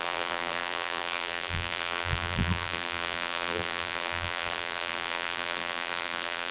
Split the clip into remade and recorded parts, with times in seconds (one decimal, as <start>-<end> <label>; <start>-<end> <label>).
0.0-6.5 remade